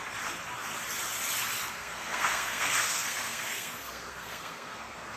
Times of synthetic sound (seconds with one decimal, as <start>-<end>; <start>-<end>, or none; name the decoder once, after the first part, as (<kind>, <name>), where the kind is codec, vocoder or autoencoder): 1.7-5.2 (codec, SNAC)